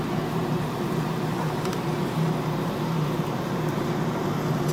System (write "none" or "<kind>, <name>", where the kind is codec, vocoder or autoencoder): vocoder, BigVGAN v2